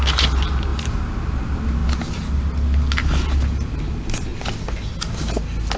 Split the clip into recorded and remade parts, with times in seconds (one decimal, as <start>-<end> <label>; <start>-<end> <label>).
0.0-5.8 recorded

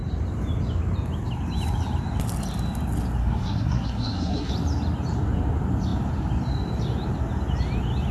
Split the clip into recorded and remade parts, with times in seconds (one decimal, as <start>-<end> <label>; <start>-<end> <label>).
0.0-3.2 recorded; 3.2-4.5 remade; 4.5-8.1 recorded

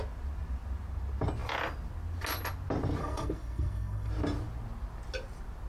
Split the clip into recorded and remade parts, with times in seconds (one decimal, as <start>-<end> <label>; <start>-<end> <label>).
0.0-3.0 recorded; 3.0-4.1 remade; 4.1-5.7 recorded

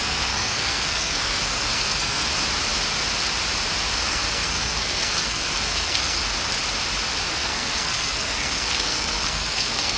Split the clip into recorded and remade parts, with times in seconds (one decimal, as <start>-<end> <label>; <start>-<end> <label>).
0.0-2.3 remade; 2.3-4.1 recorded; 4.1-6.2 remade; 6.2-7.3 recorded; 7.3-10.0 remade